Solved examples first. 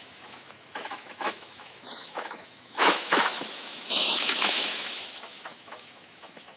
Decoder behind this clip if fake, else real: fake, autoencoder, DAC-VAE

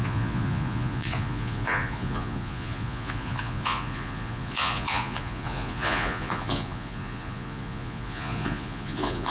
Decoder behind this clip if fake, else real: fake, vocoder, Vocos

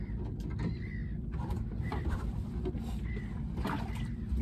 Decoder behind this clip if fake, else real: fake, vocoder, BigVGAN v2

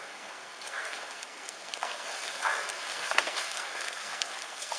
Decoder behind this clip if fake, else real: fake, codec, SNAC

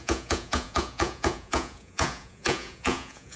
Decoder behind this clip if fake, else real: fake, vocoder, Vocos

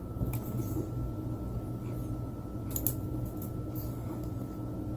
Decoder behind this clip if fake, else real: real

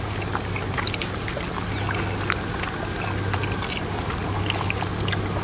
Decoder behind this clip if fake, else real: real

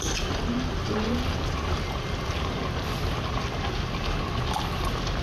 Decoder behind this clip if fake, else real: real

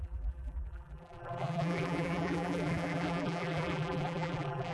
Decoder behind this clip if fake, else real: fake, vocoder, BigVGAN v2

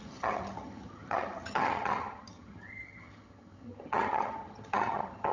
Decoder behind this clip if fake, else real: fake, vocoder, HiFi-GAN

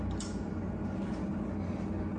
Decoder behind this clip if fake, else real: real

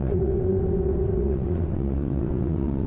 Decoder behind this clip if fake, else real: fake, vocoder, WaveNeXt